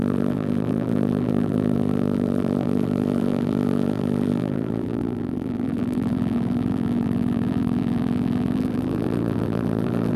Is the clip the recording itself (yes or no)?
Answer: no